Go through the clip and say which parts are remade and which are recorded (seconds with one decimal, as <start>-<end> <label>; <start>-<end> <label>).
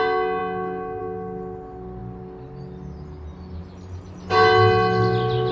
0.0-5.5 recorded